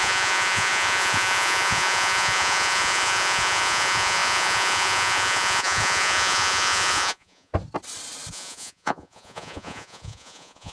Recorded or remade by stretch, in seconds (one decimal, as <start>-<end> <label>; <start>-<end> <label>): 0.0-7.5 remade; 7.5-8.3 recorded; 8.3-10.7 remade